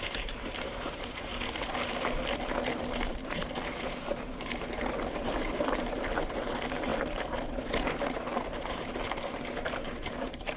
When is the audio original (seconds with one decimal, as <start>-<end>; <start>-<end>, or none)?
1.3-2.9

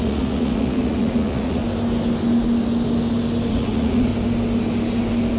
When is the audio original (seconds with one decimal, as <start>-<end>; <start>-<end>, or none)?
1.6-3.5; 4.1-5.4

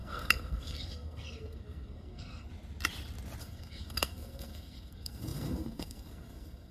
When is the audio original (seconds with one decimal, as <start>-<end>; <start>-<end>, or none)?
2.5-3.4

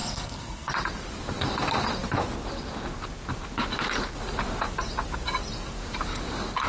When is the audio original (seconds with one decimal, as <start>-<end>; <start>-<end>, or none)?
0.7-6.7

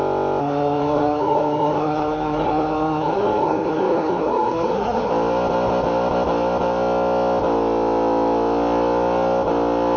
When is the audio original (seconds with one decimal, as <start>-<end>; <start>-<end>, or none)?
0.0-0.4; 5.1-10.0

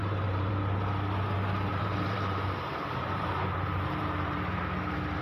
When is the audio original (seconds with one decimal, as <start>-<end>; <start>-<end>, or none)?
0.5-1.7; 4.6-5.2

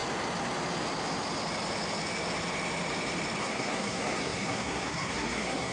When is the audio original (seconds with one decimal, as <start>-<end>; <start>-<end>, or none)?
0.0-3.4

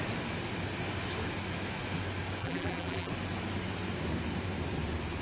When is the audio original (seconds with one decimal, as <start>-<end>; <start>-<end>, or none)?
0.0-2.4; 3.1-5.2